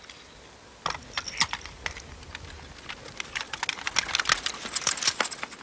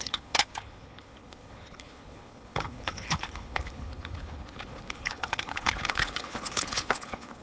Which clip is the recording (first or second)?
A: first